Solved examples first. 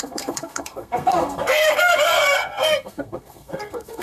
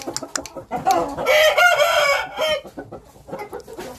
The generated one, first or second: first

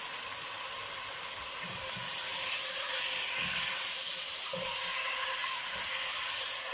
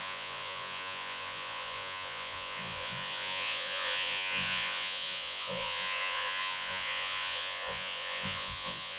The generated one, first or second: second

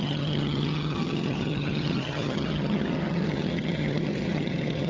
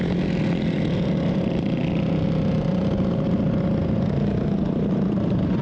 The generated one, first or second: first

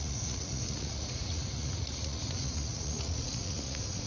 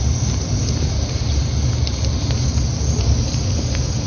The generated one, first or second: first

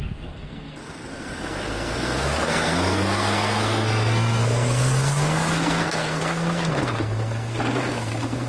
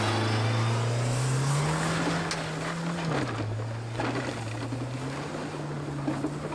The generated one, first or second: first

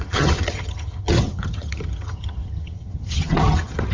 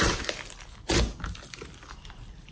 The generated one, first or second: first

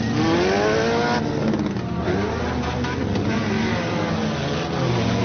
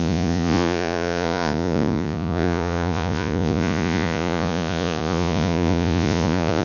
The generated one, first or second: second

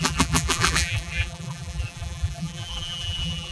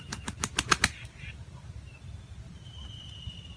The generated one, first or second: first